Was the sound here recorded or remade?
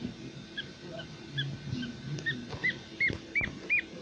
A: recorded